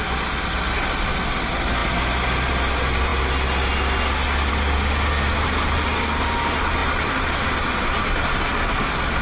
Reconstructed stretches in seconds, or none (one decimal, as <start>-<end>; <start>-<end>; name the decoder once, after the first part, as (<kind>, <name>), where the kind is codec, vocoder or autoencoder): none